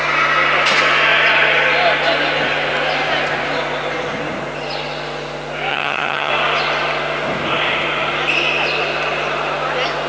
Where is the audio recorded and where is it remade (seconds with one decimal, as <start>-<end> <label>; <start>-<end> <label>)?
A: 0.0-5.7 recorded; 5.7-6.3 remade; 6.3-10.1 recorded